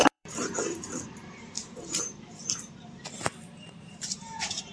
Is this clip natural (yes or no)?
no